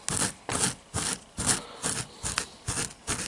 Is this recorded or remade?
recorded